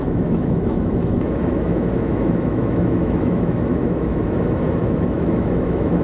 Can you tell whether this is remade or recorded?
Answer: remade